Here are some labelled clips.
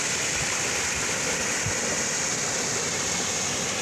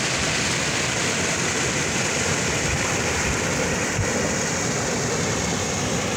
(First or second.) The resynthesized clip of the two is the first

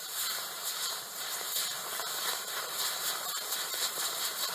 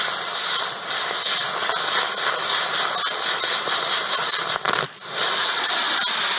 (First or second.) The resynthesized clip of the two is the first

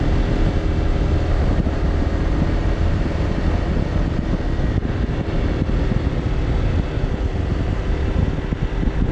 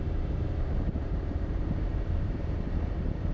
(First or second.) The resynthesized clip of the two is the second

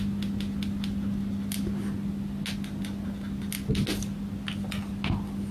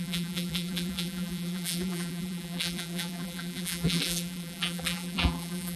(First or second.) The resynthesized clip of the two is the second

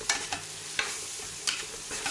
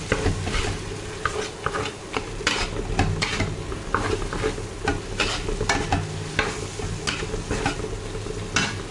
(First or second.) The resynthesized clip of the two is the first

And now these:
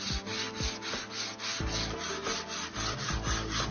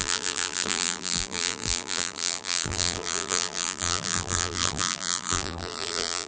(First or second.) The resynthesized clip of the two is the second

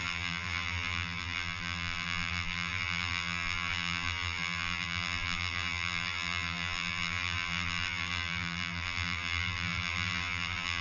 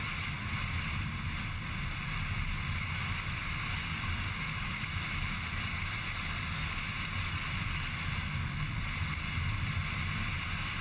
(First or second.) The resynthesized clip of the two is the first